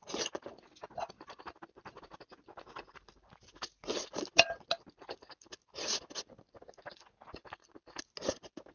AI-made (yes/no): no